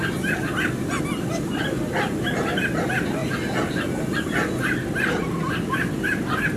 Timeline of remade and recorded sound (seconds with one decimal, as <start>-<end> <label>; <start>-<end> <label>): 0.0-6.6 recorded